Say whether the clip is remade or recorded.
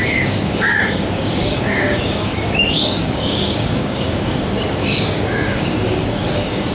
remade